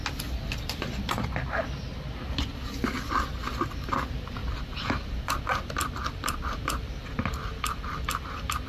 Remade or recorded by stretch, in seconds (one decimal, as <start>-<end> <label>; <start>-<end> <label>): 0.0-8.7 recorded